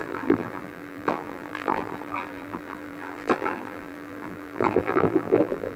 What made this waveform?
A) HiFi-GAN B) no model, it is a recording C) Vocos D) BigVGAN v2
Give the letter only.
D